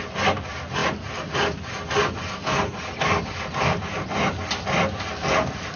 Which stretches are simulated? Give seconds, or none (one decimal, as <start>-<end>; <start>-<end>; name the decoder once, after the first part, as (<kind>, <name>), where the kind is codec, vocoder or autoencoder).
none